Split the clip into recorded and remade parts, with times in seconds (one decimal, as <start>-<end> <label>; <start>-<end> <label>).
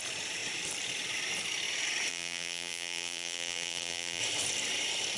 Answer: 0.0-2.1 recorded; 2.1-4.2 remade; 4.2-5.2 recorded